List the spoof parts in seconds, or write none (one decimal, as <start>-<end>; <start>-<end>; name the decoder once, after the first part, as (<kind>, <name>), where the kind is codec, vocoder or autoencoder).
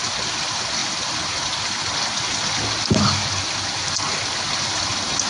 none